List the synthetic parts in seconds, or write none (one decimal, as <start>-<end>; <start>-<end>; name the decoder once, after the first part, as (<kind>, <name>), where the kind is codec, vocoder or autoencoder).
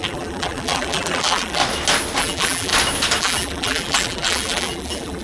0.0-1.6 (vocoder, BigVGAN v2); 2.2-2.7; 3.2-5.2